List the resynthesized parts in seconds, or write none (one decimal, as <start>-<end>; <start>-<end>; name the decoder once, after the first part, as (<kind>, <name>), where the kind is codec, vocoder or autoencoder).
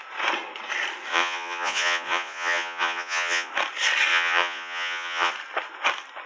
1.1-3.5 (vocoder, Vocos); 4.1-5.3